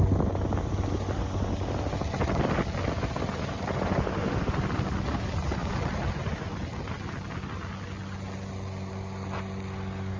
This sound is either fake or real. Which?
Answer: real